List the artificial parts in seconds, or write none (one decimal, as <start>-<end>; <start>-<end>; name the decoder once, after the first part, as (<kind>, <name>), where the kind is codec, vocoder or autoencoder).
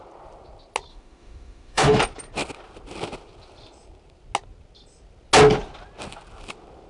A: 0.9-2.0 (autoencoder, DAC-VAE)